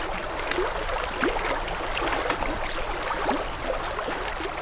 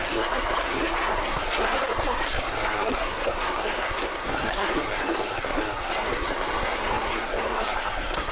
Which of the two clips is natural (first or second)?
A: first